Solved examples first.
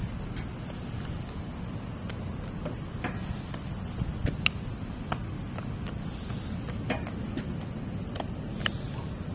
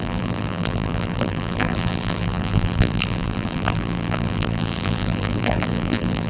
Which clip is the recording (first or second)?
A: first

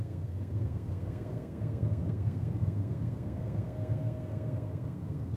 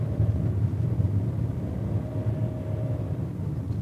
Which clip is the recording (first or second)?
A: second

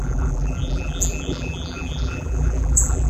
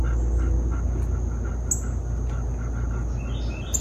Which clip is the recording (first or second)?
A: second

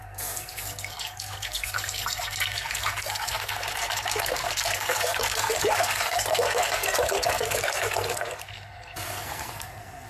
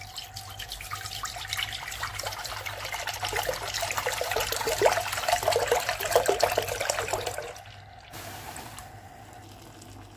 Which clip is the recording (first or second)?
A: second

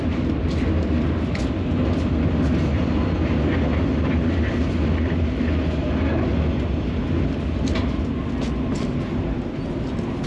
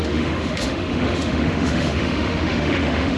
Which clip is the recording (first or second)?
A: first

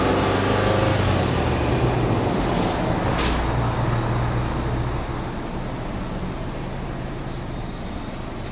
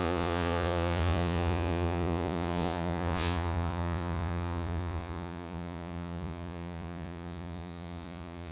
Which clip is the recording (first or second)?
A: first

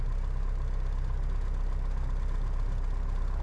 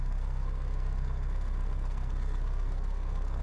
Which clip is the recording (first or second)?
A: first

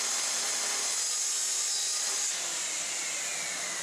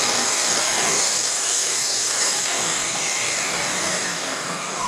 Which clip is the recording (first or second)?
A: first